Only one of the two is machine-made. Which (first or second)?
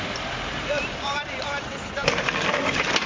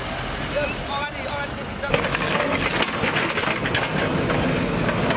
first